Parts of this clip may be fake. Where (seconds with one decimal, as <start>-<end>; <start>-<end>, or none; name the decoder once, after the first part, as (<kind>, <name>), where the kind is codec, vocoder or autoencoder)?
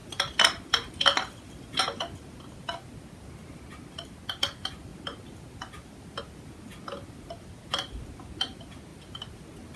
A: none